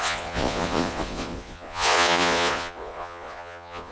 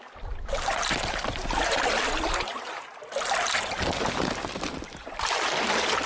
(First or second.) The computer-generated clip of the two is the first